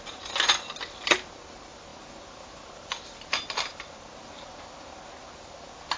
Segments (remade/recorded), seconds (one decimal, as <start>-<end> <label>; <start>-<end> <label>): 0.0-6.0 recorded